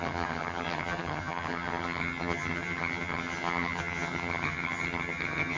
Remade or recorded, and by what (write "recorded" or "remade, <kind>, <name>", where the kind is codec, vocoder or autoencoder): remade, vocoder, HiFi-GAN